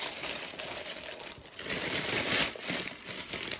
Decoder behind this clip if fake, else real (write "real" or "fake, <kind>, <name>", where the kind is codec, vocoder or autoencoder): real